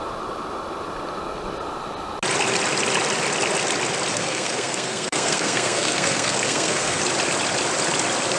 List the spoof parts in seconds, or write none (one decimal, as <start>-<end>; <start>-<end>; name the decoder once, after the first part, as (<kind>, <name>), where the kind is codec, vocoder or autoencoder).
4.1-7.0 (codec, SNAC)